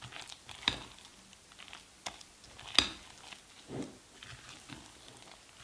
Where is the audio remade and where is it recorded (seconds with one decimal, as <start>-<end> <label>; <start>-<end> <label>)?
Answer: 0.0-5.6 recorded